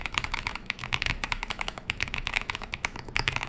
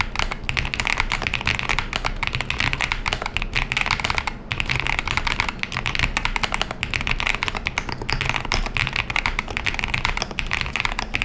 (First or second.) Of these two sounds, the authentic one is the second